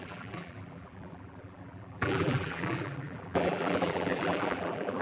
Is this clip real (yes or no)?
no